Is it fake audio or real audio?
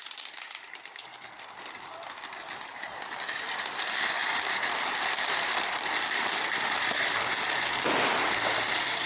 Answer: fake